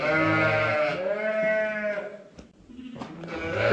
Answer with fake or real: real